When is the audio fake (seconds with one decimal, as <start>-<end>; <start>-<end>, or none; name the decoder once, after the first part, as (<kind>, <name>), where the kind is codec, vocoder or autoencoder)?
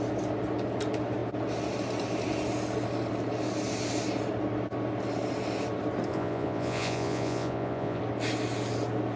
6.1-8.0 (vocoder, Vocos)